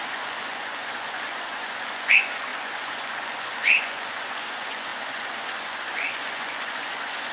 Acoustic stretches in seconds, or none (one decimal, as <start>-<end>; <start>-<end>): none